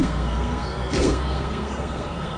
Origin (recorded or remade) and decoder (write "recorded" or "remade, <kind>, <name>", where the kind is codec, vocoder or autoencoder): remade, codec, SNAC